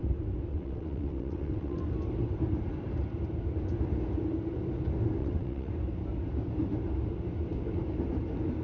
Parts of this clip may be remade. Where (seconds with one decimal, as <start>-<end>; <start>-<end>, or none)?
0.5-1.8; 5.2-5.7